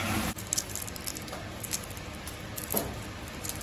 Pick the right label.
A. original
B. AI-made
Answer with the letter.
A